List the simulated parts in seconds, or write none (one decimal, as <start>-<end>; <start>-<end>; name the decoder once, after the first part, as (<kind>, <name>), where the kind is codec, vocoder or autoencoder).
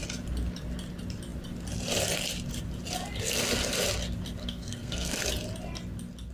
4.4-5.2 (codec, SNAC)